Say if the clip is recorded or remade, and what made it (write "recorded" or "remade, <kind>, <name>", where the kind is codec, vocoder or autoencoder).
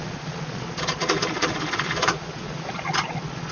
remade, vocoder, Vocos